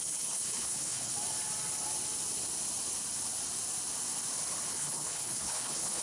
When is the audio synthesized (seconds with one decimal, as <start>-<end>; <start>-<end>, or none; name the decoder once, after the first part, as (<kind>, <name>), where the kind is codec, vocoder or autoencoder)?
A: 0.0-1.1 (codec, HILCodec); 4.7-6.0